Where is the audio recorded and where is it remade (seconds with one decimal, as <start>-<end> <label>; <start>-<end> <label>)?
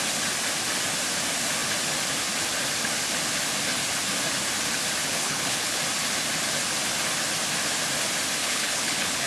0.0-5.0 recorded; 5.0-5.8 remade; 5.8-8.4 recorded; 8.4-9.3 remade